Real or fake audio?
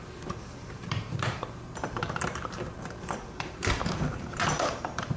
fake